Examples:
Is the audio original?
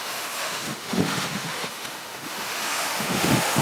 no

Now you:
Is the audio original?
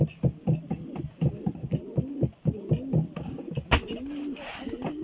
yes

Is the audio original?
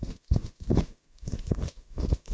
no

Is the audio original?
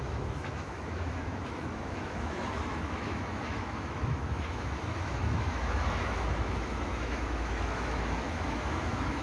no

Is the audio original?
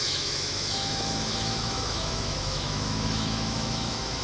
no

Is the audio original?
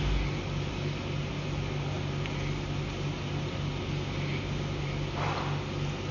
yes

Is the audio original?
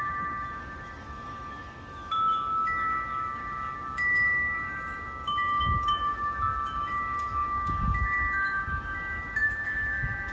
no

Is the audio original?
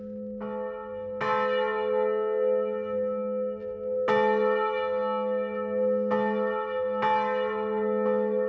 yes